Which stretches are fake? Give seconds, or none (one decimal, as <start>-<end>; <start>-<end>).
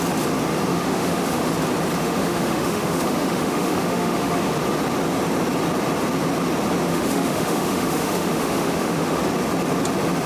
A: 0.7-1.5; 2.0-4.5; 6.9-9.2